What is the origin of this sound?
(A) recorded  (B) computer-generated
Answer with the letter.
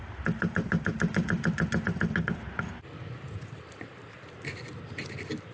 A